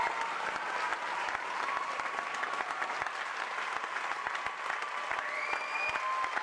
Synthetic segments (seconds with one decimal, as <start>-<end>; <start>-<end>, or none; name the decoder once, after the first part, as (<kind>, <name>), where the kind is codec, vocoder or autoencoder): none